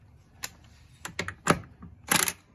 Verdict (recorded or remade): recorded